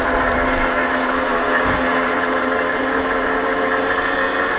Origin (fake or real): fake